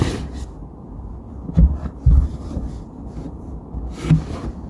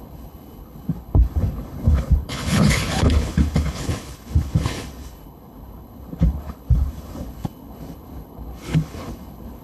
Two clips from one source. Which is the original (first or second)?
first